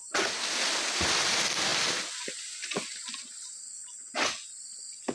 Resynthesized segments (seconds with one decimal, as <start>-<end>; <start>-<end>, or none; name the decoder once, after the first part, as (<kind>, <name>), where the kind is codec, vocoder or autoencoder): none